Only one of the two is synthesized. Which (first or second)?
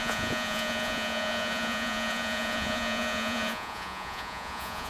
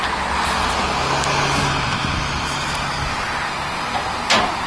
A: first